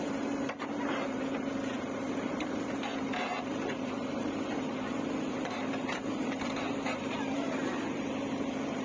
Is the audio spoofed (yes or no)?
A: yes